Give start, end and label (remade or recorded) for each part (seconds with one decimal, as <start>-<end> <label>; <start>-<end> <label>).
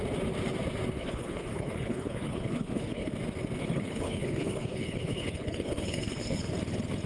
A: 0.0-1.0 recorded; 1.0-3.1 remade; 3.1-3.6 recorded; 3.6-6.5 remade; 6.5-7.1 recorded